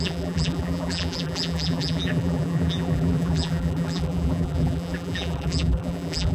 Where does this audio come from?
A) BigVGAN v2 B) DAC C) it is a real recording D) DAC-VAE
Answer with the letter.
A